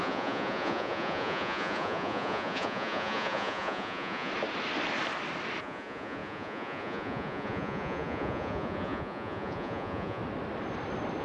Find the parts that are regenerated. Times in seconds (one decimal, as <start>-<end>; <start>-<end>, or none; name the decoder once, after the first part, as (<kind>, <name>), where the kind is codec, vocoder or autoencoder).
0.0-4.3 (vocoder, Vocos); 5.6-10.2